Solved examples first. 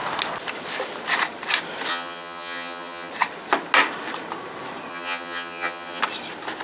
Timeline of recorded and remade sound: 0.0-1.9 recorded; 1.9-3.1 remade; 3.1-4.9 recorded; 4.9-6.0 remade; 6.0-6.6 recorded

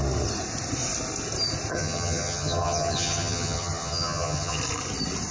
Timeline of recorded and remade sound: 0.0-1.7 recorded; 1.7-4.6 remade; 4.6-5.3 recorded

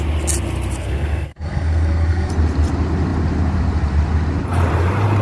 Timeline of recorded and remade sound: 0.0-0.8 recorded; 0.8-2.3 remade; 2.3-5.2 recorded

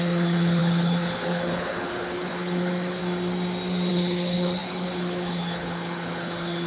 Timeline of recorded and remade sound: 0.0-3.0 remade; 3.0-3.9 recorded; 3.9-6.7 remade

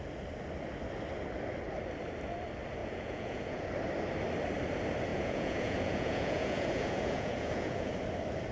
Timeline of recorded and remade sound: 0.0-2.8 recorded; 2.8-3.7 remade; 3.7-5.1 recorded; 5.1-7.9 remade; 7.9-8.5 recorded

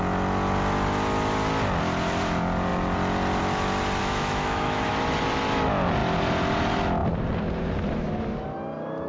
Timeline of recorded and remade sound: 0.0-4.0 recorded; 4.0-4.9 remade; 4.9-9.1 recorded